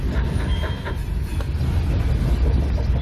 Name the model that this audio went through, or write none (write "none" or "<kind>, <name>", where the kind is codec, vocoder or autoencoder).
none